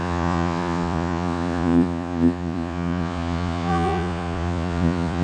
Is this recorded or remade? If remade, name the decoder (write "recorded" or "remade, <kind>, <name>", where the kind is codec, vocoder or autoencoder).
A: remade, vocoder, Vocos